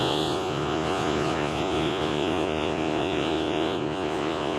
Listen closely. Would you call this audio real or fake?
fake